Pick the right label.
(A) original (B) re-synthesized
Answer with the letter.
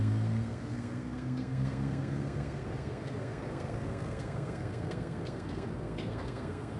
B